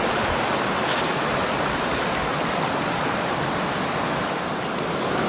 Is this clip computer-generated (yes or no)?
no